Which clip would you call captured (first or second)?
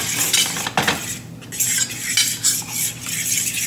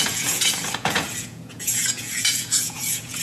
first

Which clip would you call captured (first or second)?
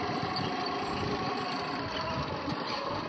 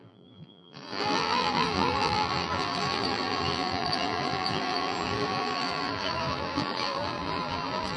first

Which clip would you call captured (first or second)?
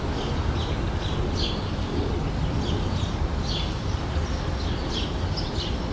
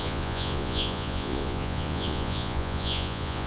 first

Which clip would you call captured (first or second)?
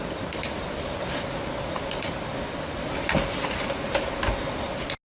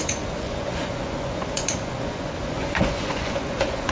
first